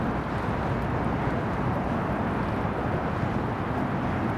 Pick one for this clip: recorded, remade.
recorded